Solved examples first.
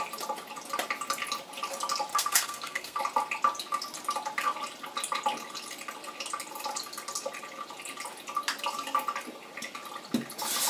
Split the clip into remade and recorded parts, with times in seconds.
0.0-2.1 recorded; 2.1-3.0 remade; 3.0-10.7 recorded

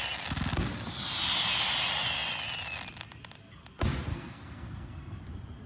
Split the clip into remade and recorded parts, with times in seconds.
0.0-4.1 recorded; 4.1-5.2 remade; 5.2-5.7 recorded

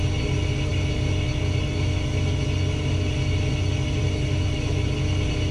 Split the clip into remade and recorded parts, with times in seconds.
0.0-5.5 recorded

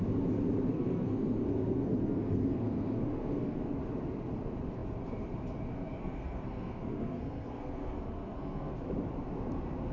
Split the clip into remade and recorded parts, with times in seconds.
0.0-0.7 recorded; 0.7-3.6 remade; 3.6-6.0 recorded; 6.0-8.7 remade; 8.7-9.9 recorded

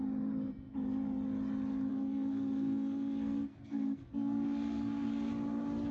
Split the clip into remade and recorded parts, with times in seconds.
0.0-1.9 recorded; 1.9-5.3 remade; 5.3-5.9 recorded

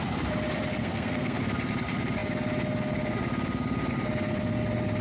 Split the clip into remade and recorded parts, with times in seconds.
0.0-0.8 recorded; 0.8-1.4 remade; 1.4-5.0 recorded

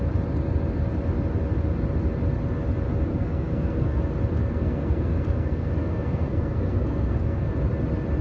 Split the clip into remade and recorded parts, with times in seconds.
0.0-3.1 recorded; 3.1-4.0 remade; 4.0-4.4 recorded; 4.4-7.5 remade; 7.5-8.2 recorded